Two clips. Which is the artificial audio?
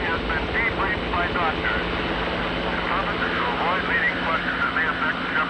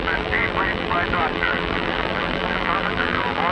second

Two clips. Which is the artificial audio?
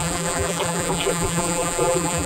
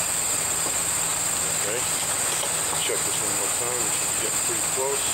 first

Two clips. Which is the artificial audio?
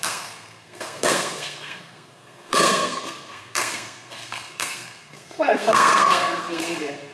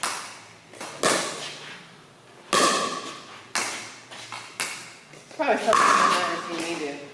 first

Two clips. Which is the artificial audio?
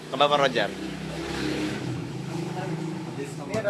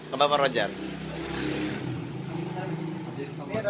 first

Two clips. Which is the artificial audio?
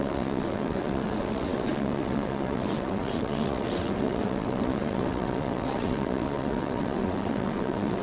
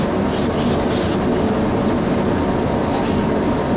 first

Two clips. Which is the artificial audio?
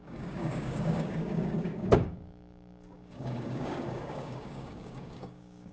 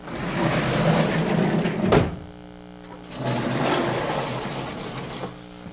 first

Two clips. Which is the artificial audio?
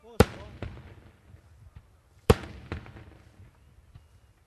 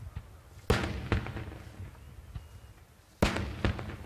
first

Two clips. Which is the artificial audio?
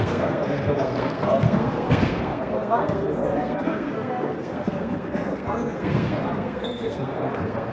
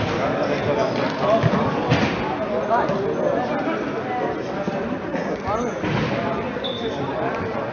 first